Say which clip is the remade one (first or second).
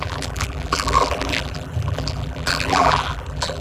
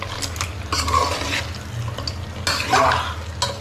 first